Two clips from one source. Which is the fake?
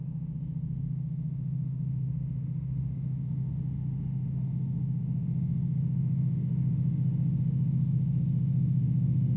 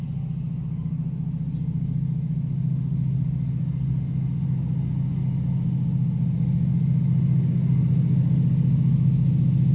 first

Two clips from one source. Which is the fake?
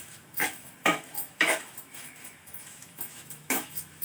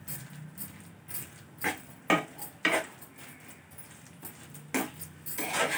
first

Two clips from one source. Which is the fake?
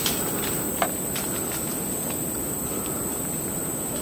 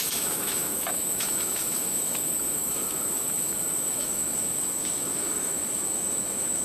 second